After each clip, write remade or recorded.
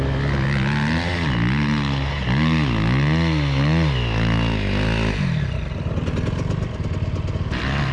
recorded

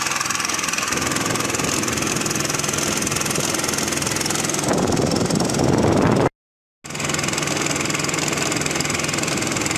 recorded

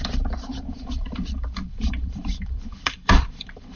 remade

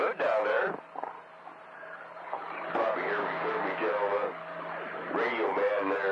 recorded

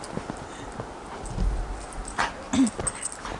recorded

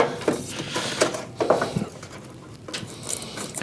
recorded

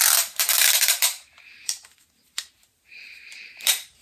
remade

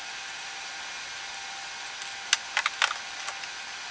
recorded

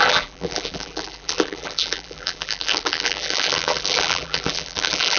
remade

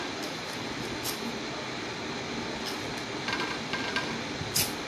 recorded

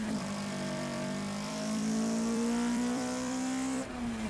remade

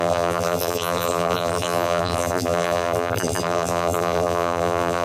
remade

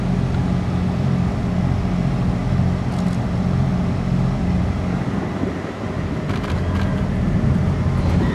recorded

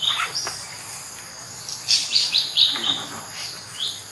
remade